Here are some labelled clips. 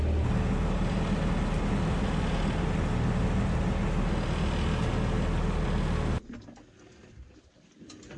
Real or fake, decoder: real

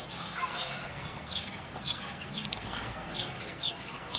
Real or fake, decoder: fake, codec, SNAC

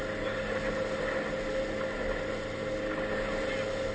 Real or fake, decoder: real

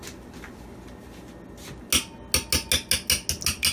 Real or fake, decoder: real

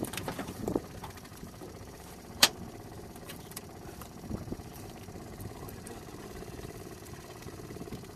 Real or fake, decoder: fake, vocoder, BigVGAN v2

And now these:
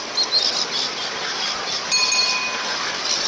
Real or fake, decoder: real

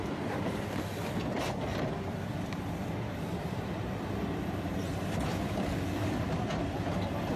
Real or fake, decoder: fake, vocoder, BigVGAN v2